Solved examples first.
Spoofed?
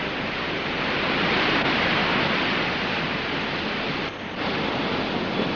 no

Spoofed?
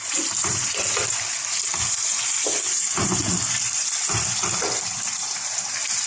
no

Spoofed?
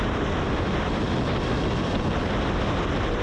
no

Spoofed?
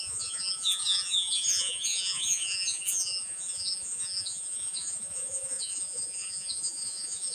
yes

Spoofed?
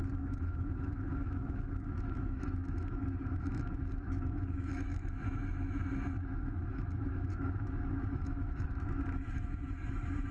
yes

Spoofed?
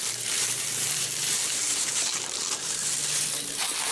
yes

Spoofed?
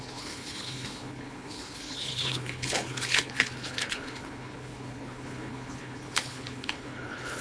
yes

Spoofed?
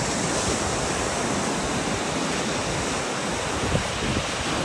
no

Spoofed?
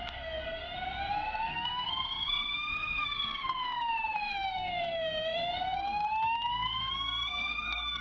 yes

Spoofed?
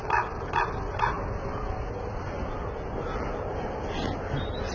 no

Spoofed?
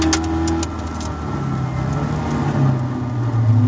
no